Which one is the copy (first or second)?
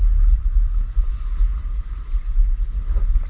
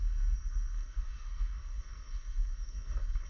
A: second